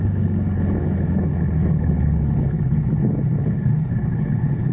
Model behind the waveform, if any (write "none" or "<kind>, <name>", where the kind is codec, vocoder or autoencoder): codec, HILCodec